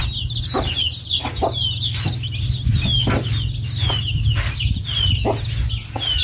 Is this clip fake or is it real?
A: real